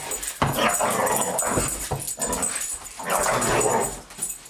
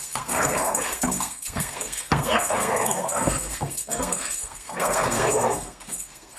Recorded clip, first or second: first